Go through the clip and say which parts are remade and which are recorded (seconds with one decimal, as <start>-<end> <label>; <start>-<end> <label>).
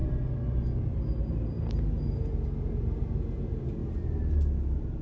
0.0-5.0 recorded